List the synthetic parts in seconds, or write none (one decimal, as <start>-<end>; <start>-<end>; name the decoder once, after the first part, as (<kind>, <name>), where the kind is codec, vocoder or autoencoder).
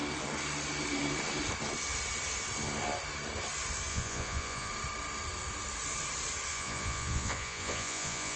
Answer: 3.9-4.7 (vocoder, Vocos); 6.5-8.4